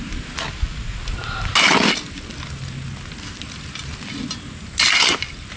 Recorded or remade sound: recorded